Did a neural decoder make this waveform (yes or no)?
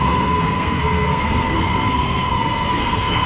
yes